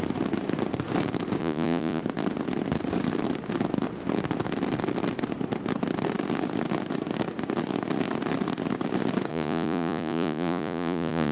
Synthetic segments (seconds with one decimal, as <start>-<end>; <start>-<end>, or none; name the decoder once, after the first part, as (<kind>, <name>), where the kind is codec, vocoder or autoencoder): 1.4-2.0 (vocoder, Vocos); 9.3-11.3